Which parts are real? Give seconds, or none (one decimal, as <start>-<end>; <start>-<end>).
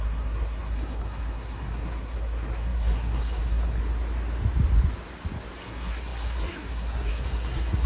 3.8-5.6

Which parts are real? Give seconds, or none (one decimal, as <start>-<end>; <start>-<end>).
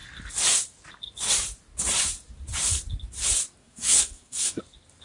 0.0-3.6; 4.6-5.0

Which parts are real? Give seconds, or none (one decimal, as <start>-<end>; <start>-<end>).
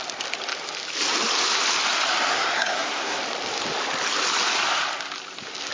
0.0-2.3; 3.2-5.7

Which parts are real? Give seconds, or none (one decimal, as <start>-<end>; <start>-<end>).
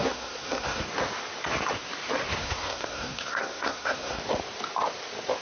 0.8-2.4; 4.2-5.4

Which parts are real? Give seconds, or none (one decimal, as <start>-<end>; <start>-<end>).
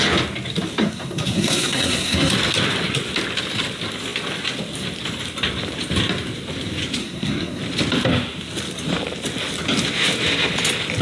0.0-0.8; 2.3-7.0; 7.6-11.0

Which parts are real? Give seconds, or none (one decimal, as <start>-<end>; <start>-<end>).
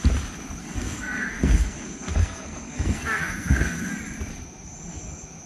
0.0-0.6; 3.9-5.5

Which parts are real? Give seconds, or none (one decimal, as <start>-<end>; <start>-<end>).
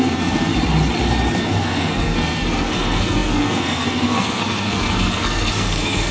0.5-1.4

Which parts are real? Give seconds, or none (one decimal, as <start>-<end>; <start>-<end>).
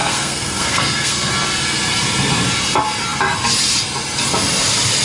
1.3-5.0